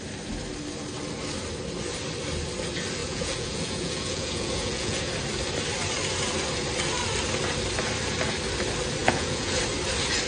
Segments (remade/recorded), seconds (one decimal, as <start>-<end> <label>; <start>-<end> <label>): 0.0-3.0 recorded; 3.0-5.1 remade; 5.1-9.0 recorded; 9.0-9.6 remade; 9.6-10.3 recorded

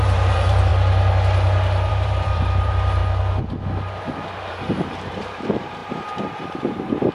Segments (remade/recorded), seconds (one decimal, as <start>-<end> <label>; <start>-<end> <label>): 0.0-0.7 remade; 0.7-1.9 recorded; 1.9-3.0 remade; 3.0-4.5 recorded; 4.5-7.1 remade

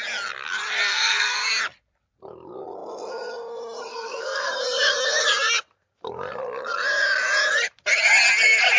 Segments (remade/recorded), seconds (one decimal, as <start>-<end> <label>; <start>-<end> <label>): 0.0-0.9 recorded; 0.9-1.5 remade; 1.5-3.9 recorded; 3.9-4.5 remade; 4.5-8.8 recorded

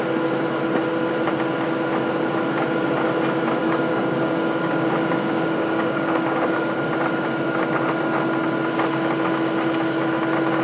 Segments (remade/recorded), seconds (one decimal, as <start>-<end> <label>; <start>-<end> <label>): 0.0-3.6 recorded; 3.6-6.9 remade; 6.9-10.6 recorded